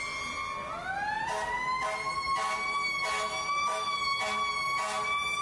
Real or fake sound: real